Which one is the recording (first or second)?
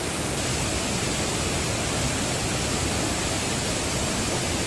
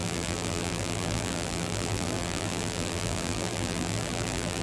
first